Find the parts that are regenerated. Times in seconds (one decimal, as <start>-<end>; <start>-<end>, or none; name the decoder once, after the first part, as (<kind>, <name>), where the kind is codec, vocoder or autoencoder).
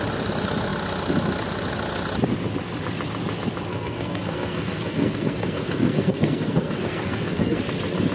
3.7-7.6 (codec, SNAC)